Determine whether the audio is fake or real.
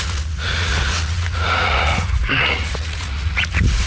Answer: fake